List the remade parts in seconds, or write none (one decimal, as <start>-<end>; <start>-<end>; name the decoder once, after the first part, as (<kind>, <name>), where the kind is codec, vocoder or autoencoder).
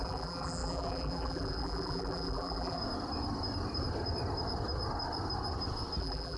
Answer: 0.0-2.8 (vocoder, BigVGAN v2); 6.0-6.4